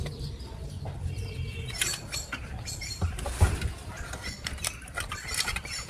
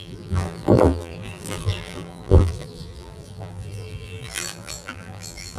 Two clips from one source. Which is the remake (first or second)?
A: second